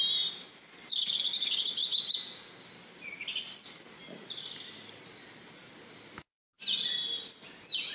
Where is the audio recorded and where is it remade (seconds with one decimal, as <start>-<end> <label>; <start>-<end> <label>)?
0.0-7.9 recorded